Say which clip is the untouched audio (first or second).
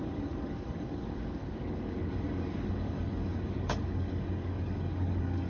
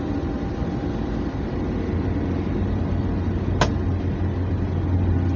second